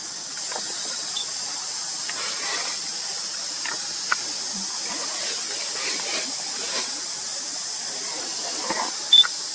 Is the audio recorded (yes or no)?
yes